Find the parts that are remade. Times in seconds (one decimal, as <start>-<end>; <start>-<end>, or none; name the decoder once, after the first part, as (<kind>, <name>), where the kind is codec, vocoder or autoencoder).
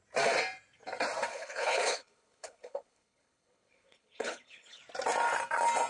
1.3-4.8 (codec, HILCodec)